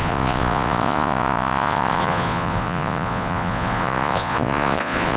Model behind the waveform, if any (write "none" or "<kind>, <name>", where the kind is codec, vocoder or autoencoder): vocoder, Vocos